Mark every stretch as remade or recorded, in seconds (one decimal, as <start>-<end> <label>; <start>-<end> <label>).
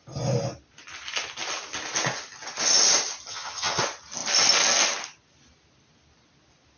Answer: 0.0-3.3 recorded; 3.3-3.8 remade; 3.8-6.8 recorded